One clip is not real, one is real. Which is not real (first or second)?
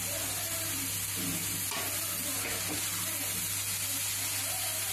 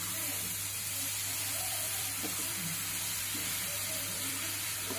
second